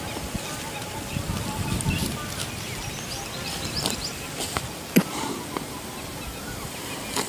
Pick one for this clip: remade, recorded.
recorded